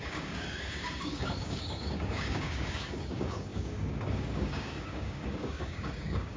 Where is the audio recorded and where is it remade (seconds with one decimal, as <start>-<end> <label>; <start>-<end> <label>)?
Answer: 0.0-6.4 remade